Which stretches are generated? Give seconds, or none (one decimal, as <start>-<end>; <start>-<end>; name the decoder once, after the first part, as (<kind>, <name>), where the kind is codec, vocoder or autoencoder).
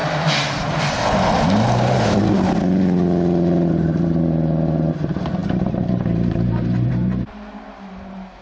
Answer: none